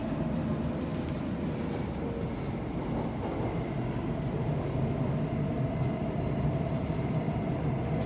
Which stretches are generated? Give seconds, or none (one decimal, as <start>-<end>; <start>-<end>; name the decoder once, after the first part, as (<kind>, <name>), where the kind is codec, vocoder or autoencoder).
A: none